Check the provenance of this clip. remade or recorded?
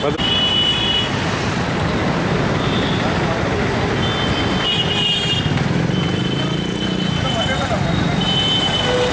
recorded